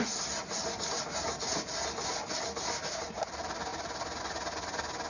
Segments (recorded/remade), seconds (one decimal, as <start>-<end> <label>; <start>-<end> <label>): 0.0-5.1 recorded